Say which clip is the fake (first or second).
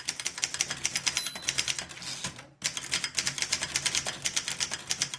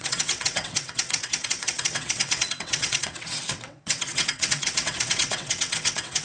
second